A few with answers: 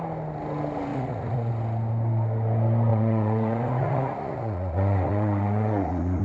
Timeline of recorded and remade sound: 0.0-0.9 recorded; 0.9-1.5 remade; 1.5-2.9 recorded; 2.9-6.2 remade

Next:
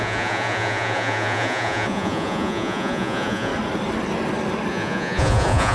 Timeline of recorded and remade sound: 0.0-3.5 remade; 3.5-4.7 recorded; 4.7-5.7 remade

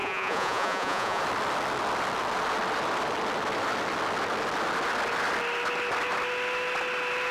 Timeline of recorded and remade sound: 0.0-1.2 remade; 1.2-7.3 recorded

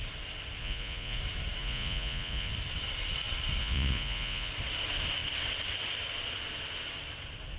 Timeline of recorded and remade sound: 0.0-0.6 recorded; 0.6-1.2 remade; 1.2-1.6 recorded; 1.6-2.5 remade; 2.5-3.6 recorded; 3.6-4.5 remade; 4.5-7.6 recorded